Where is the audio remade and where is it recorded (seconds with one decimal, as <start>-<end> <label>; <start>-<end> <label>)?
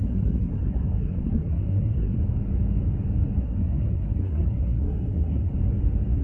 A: 0.0-2.2 remade; 2.2-3.4 recorded; 3.4-5.5 remade; 5.5-6.2 recorded